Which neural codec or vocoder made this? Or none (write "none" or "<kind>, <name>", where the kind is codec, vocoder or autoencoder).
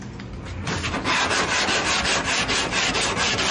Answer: none